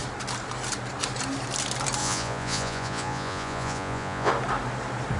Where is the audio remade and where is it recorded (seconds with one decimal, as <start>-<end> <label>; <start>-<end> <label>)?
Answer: 0.0-2.0 recorded; 2.0-4.3 remade; 4.3-5.2 recorded